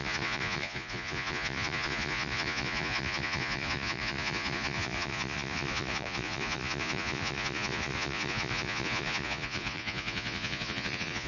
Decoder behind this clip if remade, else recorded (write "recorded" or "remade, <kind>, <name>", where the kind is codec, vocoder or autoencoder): remade, vocoder, Vocos